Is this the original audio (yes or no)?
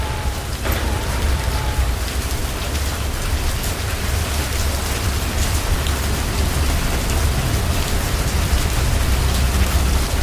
yes